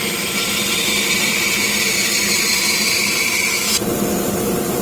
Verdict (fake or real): fake